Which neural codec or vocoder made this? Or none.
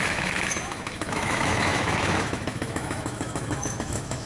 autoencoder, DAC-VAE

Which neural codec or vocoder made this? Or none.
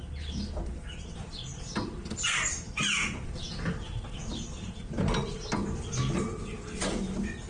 none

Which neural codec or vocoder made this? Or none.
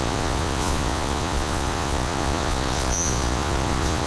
vocoder, Vocos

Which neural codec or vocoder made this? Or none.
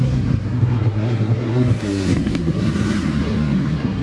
codec, SNAC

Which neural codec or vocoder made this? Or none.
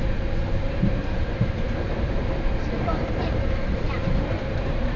vocoder, BigVGAN v2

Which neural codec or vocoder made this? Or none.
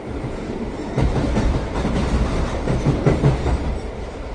vocoder, BigVGAN v2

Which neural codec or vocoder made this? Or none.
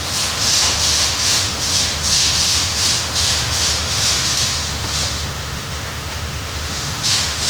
autoencoder, DAC-VAE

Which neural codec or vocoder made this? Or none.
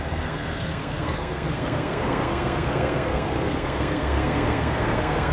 codec, SNAC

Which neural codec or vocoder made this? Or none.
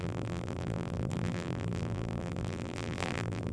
vocoder, BigVGAN v2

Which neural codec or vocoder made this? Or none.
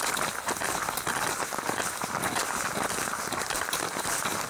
none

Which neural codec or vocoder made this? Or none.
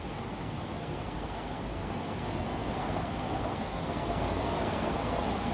codec, SNAC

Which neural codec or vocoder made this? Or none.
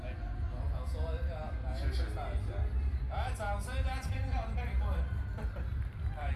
none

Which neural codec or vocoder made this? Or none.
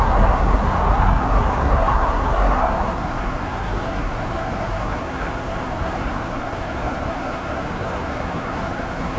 codec, SNAC